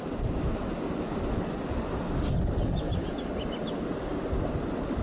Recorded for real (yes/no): yes